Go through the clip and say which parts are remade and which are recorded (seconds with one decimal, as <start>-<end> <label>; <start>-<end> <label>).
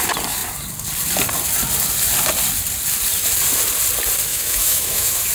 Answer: 0.0-4.3 recorded; 4.3-5.3 remade